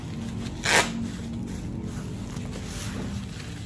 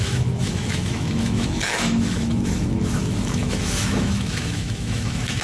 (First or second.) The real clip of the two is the first